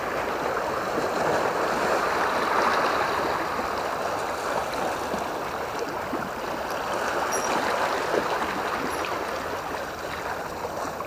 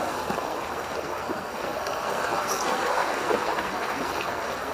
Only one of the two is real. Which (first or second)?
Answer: first